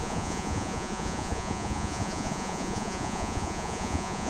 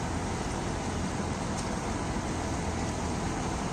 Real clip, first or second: second